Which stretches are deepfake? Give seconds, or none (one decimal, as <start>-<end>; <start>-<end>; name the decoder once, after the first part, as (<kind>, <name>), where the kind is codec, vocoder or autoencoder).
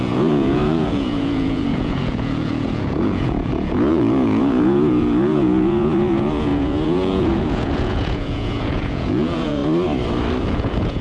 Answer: 0.0-9.6 (vocoder, Vocos); 10.4-11.0